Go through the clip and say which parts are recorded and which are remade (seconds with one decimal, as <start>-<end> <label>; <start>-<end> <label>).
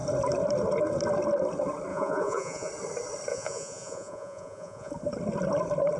0.0-1.9 recorded; 1.9-2.7 remade; 2.7-3.3 recorded; 3.3-4.9 remade; 4.9-6.0 recorded